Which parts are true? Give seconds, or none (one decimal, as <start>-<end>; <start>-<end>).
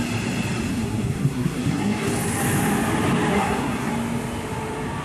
0.0-0.7; 2.1-3.3; 3.9-5.0